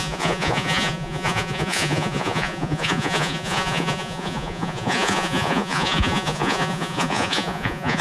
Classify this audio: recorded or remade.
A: remade